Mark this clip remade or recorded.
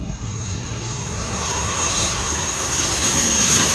remade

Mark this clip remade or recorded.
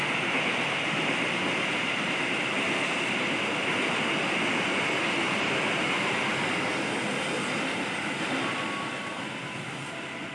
recorded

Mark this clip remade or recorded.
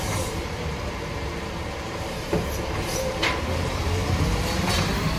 remade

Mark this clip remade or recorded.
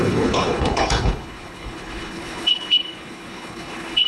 remade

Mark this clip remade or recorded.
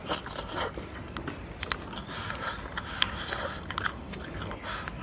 recorded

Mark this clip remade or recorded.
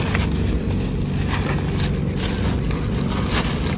recorded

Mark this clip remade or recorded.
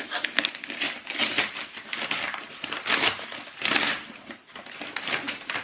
recorded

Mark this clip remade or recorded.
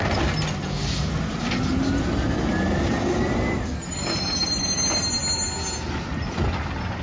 recorded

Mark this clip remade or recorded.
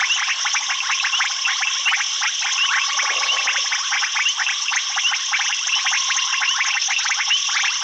recorded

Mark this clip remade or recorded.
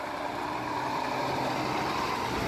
recorded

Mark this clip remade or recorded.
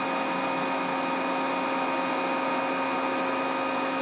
recorded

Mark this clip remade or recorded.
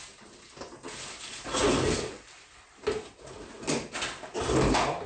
recorded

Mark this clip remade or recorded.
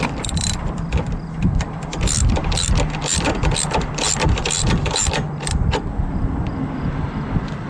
remade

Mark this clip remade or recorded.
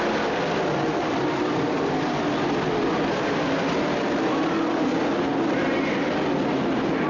remade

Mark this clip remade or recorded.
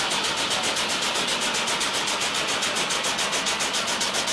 recorded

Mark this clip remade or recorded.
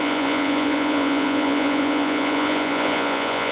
remade